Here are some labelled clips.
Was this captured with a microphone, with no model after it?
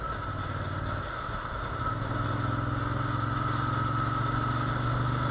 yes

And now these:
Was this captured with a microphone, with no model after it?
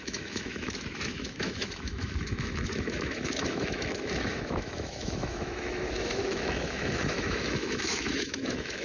no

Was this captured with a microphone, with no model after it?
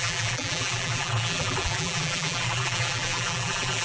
no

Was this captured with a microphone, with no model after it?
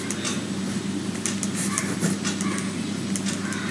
yes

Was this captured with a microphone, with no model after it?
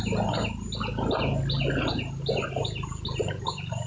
yes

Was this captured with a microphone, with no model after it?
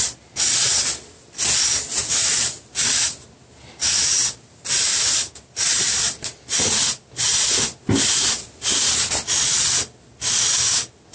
yes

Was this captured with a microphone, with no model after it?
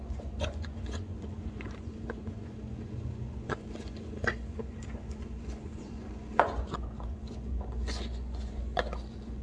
no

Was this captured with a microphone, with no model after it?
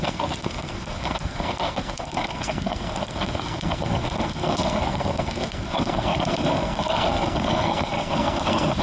no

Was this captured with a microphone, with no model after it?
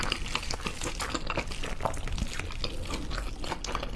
yes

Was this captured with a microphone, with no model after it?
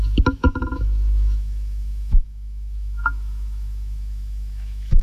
no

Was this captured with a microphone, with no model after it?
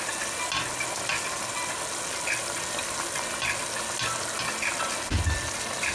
yes